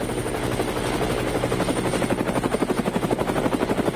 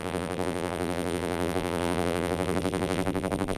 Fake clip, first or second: second